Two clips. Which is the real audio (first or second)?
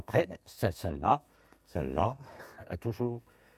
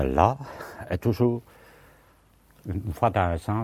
second